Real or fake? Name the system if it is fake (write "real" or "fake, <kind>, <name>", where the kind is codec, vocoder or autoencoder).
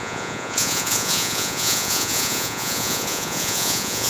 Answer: fake, vocoder, Vocos